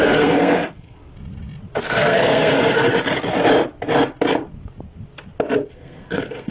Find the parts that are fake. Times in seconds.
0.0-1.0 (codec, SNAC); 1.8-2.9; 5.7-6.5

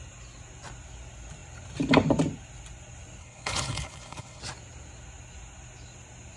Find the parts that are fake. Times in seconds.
3.2-4.4 (codec, HILCodec)

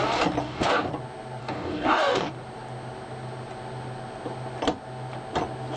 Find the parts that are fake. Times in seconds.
0.4-0.9 (codec, DAC); 1.4-2.3

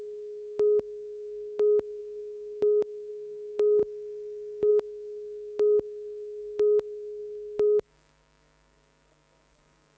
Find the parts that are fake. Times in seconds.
0.0-3.8 (codec, DAC); 4.7-10.0

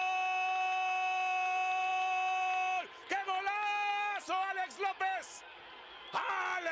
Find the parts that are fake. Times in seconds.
none

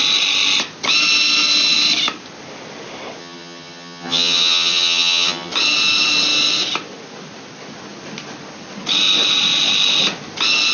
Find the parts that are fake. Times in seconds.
3.2-5.5 (vocoder, HiFi-GAN)

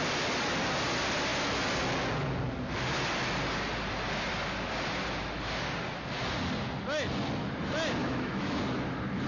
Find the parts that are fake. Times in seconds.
8.0-8.6 (autoencoder, DAC-VAE)

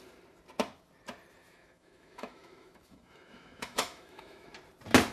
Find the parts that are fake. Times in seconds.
1.4-4.5 (autoencoder, DAC-VAE)